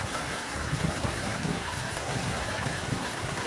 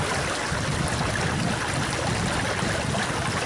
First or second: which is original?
second